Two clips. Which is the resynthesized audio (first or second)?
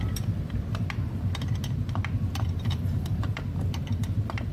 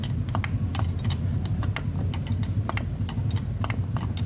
first